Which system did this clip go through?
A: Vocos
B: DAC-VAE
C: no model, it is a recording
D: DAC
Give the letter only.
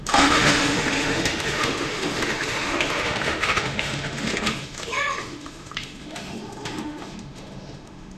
B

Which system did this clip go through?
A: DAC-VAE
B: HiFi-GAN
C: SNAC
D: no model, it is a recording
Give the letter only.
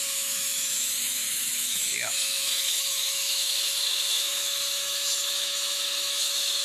A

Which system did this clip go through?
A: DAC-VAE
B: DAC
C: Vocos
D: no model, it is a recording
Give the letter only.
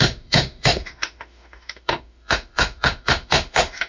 A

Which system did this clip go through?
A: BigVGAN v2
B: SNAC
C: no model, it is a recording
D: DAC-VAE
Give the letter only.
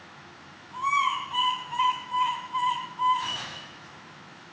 D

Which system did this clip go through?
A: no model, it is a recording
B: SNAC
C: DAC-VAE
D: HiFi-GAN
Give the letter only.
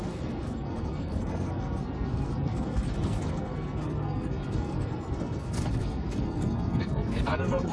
B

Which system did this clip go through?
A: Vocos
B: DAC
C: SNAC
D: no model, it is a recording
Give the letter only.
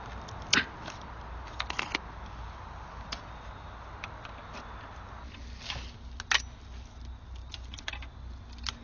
D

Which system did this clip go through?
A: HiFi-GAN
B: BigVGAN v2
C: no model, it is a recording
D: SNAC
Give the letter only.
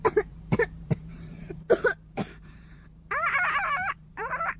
B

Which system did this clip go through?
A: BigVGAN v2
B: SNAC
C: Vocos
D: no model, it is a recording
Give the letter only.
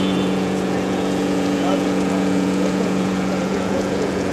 C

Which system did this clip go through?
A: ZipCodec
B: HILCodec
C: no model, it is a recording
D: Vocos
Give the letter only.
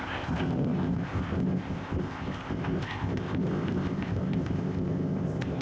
A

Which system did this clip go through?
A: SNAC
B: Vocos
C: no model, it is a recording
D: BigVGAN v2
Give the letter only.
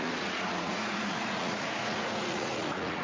B